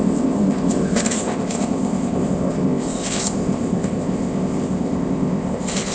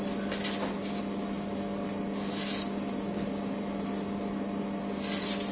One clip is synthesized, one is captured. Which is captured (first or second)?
second